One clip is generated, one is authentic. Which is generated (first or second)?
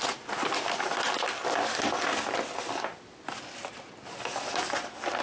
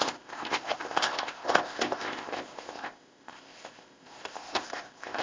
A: second